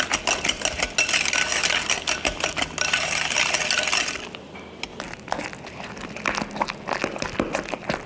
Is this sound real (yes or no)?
yes